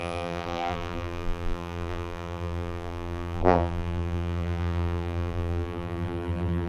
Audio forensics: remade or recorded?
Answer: remade